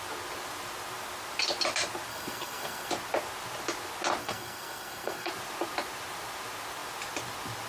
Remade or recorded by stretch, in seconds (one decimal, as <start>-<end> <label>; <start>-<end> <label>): 0.0-2.1 recorded; 2.1-2.9 remade; 2.9-4.2 recorded; 4.2-5.3 remade; 5.3-7.7 recorded